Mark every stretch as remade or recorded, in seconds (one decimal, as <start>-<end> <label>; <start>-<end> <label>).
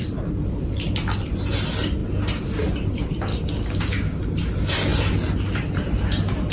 0.0-3.3 recorded; 3.3-4.2 remade; 4.2-6.5 recorded